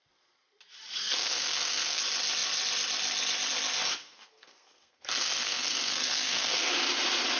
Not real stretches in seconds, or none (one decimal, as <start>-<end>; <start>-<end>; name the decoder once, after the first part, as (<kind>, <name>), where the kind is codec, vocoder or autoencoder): 1.0-2.0 (codec, SNAC); 4.0-6.7